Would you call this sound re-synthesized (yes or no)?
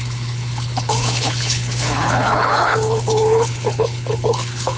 yes